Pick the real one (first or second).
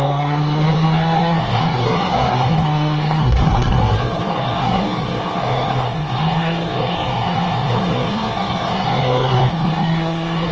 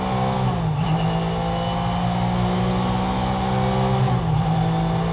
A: second